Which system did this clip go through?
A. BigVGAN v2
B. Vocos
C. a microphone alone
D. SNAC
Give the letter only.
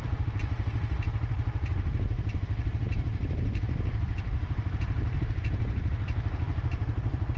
A